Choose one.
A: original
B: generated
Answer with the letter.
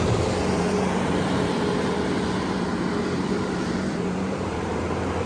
B